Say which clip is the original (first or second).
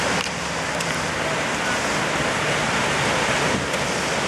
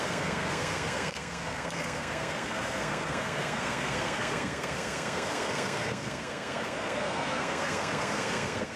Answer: first